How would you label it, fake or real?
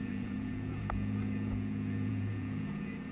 fake